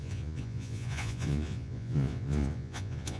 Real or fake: fake